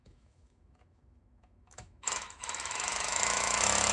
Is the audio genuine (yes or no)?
no